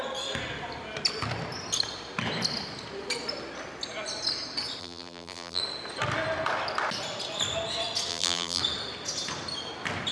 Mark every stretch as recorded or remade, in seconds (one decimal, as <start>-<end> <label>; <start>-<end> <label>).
0.0-4.8 recorded; 4.8-5.6 remade; 5.6-8.1 recorded; 8.1-8.6 remade; 8.6-10.1 recorded